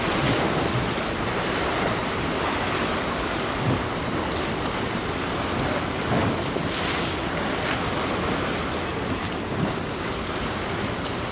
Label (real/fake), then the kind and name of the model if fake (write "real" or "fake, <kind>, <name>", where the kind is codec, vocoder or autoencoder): real